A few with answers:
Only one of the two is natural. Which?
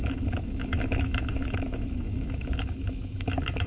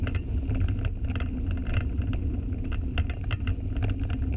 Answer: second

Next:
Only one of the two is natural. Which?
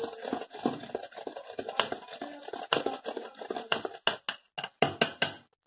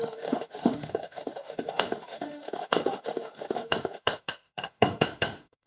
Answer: first